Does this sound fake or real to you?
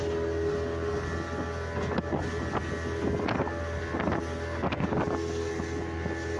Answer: real